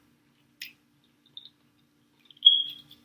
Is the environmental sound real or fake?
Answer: real